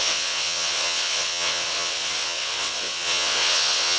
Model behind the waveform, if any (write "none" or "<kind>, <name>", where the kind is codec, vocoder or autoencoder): vocoder, WaveNeXt